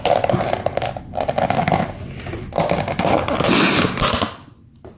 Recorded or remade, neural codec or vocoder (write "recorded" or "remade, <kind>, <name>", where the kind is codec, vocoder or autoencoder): recorded